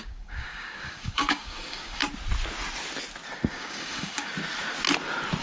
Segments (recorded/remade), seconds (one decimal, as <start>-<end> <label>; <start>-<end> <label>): 0.0-2.0 remade; 2.0-3.5 recorded; 3.5-4.3 remade; 4.3-5.4 recorded